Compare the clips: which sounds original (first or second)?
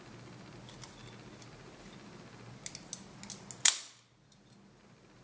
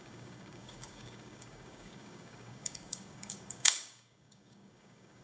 first